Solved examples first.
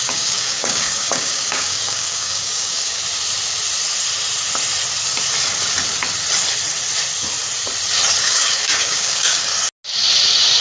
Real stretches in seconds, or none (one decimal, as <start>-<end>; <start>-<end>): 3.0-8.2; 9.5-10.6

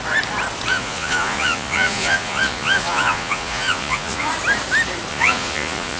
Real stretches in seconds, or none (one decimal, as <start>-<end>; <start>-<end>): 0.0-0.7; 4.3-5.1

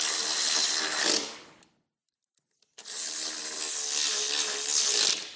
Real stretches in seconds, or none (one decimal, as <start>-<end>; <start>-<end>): 0.0-2.3; 3.6-5.4

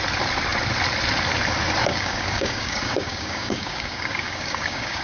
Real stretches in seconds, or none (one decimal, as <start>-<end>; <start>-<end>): 0.0-1.8

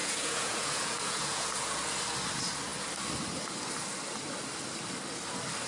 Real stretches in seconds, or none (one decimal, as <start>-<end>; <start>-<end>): 1.8-5.7